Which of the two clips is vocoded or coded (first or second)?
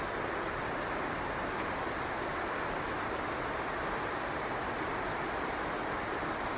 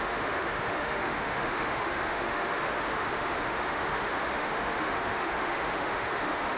second